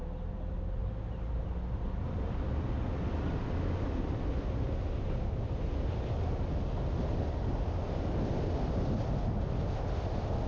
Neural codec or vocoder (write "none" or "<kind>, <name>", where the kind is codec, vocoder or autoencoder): none